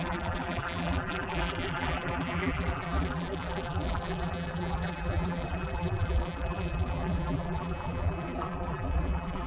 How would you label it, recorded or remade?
remade